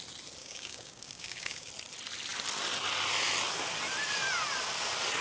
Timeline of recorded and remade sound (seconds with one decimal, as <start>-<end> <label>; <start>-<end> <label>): 0.0-0.4 recorded; 0.4-1.7 remade; 1.7-5.2 recorded